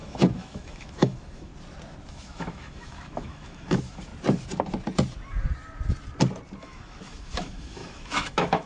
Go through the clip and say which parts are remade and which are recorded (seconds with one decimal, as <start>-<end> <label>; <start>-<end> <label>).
0.0-1.5 remade; 1.5-2.1 recorded; 2.1-4.1 remade; 4.1-6.6 recorded; 6.6-8.7 remade